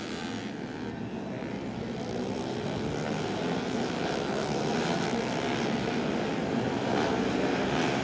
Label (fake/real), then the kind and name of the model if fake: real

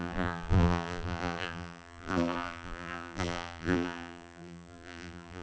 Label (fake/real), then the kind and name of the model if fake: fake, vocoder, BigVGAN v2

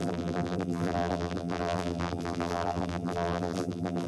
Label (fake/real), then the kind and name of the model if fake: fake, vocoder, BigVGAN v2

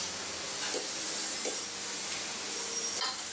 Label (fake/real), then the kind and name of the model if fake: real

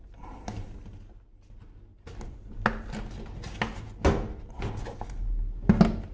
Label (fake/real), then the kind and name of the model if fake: real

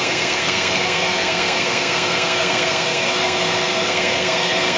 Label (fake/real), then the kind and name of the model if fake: fake, codec, SNAC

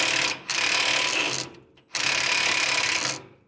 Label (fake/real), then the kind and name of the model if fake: real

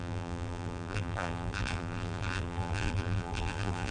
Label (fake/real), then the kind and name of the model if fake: fake, vocoder, BigVGAN v2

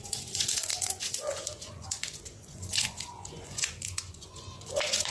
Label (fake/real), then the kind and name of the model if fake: fake, vocoder, Vocos